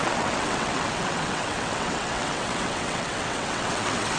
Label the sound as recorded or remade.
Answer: remade